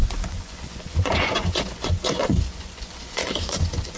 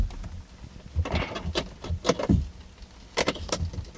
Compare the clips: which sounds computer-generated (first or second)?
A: first